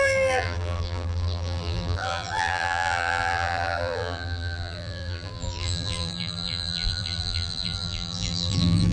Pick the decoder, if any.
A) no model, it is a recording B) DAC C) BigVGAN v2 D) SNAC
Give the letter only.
C